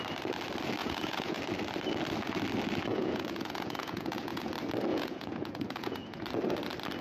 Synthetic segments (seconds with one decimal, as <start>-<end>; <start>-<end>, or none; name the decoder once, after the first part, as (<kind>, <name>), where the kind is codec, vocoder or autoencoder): 0.8-1.4 (vocoder, Vocos); 2.9-4.5; 4.9-6.2